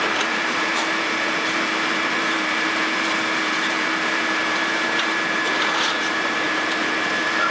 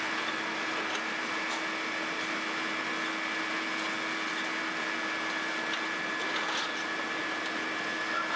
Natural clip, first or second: second